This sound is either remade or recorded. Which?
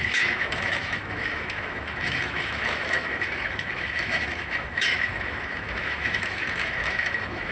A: remade